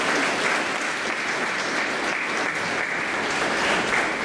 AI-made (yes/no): no